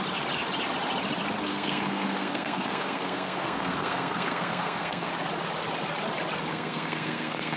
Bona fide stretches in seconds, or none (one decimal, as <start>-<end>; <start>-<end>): 0.0-1.5; 5.1-6.5